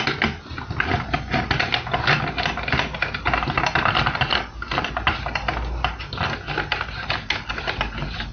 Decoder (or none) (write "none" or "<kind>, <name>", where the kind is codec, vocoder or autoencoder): none